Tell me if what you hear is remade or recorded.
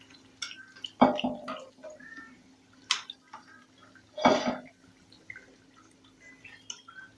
recorded